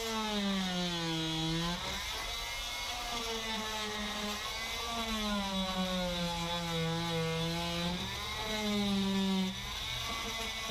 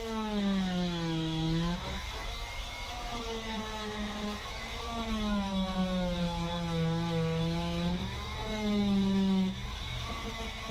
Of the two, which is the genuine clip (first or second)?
first